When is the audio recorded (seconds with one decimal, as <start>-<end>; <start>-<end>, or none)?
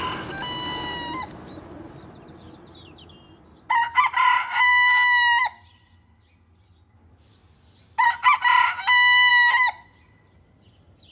0.0-11.1